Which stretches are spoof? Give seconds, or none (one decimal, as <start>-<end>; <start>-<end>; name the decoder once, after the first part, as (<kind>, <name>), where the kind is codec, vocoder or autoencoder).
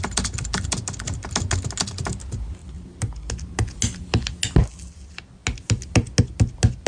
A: none